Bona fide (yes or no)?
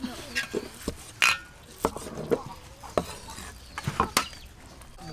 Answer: yes